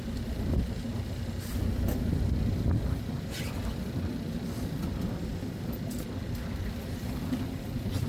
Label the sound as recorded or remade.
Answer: recorded